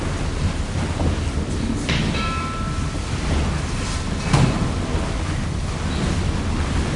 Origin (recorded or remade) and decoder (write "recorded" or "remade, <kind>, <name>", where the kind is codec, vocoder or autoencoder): recorded